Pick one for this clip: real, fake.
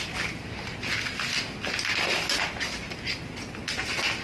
real